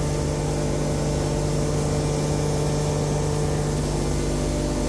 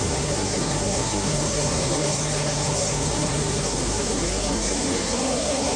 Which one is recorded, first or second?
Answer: first